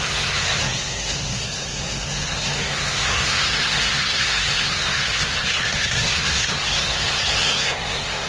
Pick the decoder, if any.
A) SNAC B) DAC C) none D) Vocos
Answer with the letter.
A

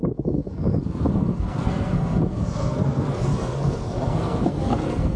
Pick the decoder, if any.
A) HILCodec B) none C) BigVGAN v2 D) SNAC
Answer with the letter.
D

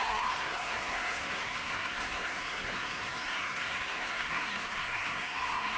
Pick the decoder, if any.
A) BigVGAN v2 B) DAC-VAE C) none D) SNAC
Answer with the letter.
D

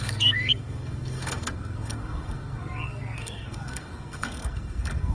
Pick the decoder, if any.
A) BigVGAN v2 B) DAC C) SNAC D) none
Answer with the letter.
C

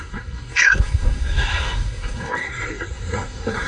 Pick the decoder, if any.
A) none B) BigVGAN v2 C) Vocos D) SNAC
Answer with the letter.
D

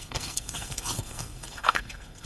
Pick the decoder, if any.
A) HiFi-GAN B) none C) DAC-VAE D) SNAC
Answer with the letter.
D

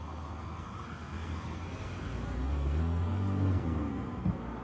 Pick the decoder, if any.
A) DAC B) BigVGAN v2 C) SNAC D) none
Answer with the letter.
C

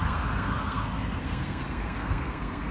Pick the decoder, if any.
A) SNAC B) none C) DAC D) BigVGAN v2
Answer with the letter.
A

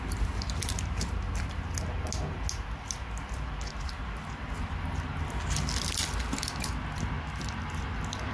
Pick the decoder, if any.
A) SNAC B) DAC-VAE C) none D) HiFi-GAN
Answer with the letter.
C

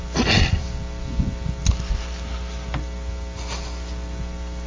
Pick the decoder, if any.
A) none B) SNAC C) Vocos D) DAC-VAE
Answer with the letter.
A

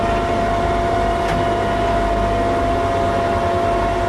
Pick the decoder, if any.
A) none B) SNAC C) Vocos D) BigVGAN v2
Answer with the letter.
A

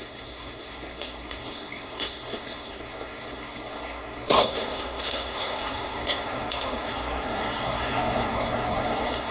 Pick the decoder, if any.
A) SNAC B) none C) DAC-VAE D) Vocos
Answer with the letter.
A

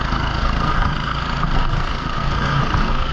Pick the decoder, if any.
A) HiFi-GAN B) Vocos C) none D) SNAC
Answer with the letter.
D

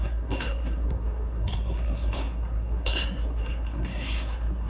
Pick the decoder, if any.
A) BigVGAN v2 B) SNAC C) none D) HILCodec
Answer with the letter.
B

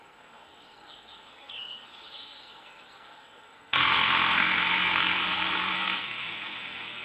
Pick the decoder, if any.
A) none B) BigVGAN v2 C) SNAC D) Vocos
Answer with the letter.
C